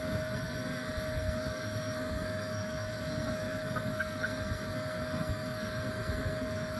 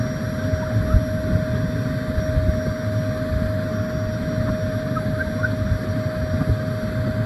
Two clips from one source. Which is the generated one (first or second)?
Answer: first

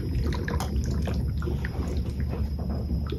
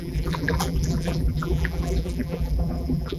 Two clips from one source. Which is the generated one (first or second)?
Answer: second